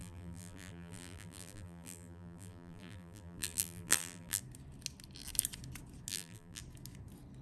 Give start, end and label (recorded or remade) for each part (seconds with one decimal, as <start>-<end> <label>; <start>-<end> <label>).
0.0-4.4 remade; 4.4-6.1 recorded; 6.1-6.6 remade; 6.6-7.4 recorded